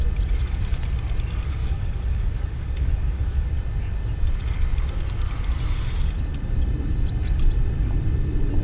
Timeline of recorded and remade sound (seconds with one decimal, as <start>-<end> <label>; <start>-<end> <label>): 0.0-1.6 recorded; 1.6-3.5 remade; 3.5-8.6 recorded